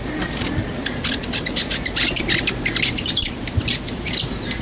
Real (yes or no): no